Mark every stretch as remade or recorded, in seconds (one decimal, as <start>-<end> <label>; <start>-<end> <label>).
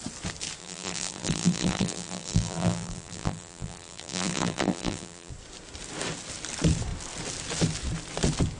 0.0-0.6 recorded; 0.6-5.3 remade; 5.3-8.6 recorded